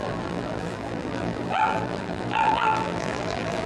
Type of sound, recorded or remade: remade